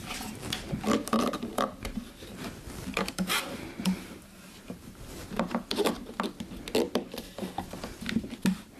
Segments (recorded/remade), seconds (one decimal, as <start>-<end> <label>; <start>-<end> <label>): 0.0-1.0 recorded; 1.0-6.1 remade; 6.1-8.8 recorded